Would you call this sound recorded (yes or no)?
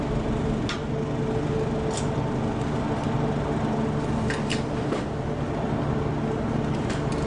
yes